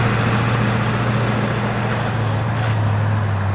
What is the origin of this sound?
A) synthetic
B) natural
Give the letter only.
B